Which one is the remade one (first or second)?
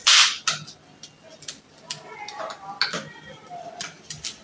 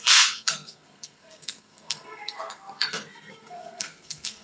second